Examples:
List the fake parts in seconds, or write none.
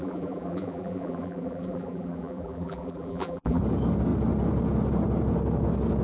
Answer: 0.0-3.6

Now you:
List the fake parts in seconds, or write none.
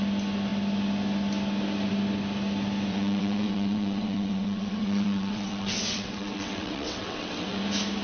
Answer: 2.9-7.6